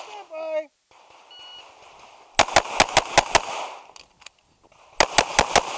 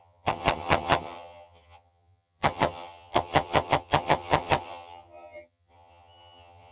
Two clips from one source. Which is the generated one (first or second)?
second